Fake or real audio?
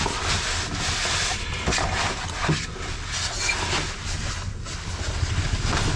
real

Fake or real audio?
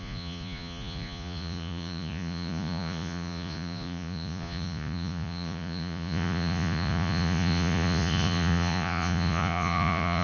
fake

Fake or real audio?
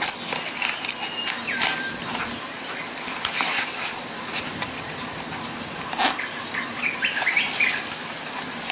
real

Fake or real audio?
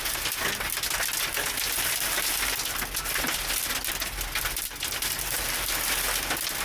real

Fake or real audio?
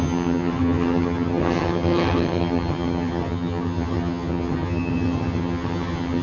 fake